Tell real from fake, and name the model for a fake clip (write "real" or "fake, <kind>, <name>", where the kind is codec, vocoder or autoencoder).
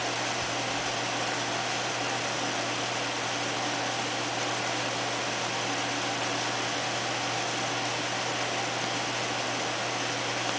real